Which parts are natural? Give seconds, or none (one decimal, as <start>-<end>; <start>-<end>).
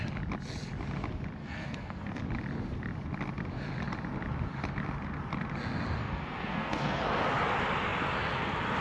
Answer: 0.0-1.4; 2.2-6.0; 7.0-8.8